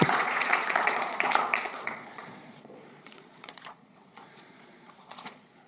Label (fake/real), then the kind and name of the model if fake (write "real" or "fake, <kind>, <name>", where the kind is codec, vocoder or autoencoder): fake, vocoder, Vocos